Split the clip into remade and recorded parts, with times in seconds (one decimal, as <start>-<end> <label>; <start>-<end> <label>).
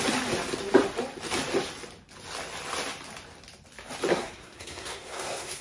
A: 0.0-4.1 recorded; 4.1-5.6 remade